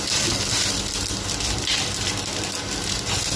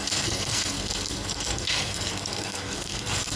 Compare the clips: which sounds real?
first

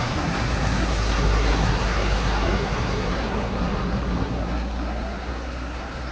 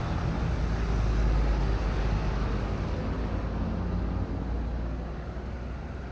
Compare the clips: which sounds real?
second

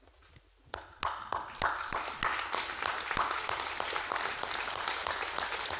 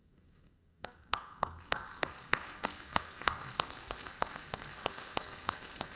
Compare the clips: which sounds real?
first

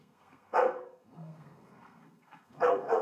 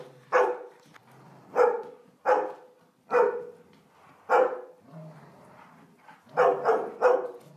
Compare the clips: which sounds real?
second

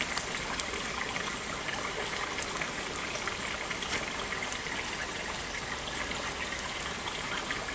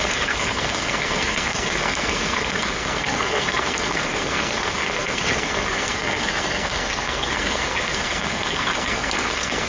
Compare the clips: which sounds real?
first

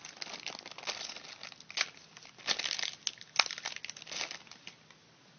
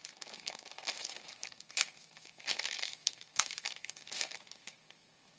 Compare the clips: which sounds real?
first